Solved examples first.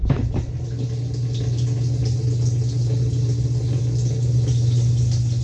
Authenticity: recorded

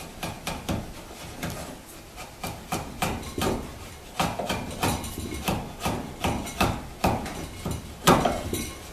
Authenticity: recorded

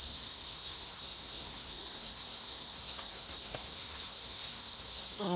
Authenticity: remade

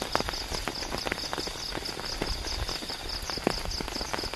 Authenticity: recorded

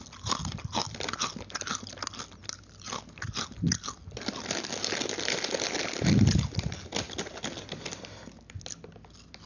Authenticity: recorded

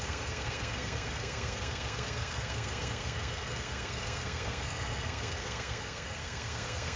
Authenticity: remade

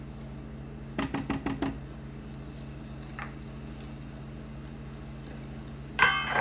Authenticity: recorded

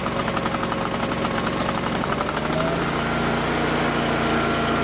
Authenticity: recorded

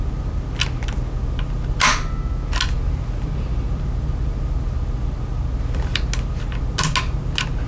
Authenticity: recorded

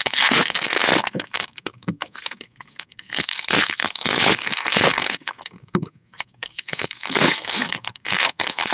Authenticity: remade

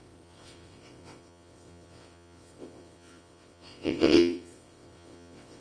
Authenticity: remade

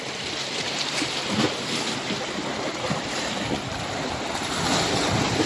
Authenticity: recorded